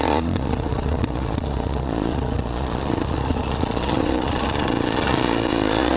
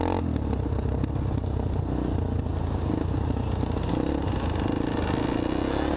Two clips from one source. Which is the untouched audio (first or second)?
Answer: second